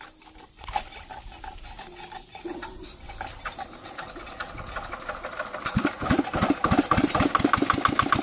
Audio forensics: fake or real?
real